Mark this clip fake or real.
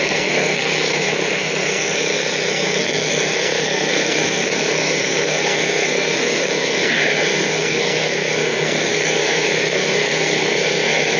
fake